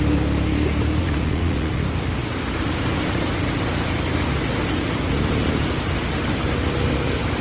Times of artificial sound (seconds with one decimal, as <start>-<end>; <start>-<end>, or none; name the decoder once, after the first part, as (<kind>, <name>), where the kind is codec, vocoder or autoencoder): 1.0-1.8 (vocoder, Vocos)